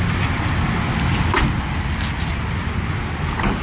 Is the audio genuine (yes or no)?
yes